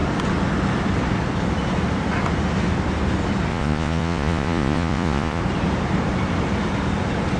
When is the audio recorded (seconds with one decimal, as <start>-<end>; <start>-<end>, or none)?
0.0-3.5; 5.4-7.4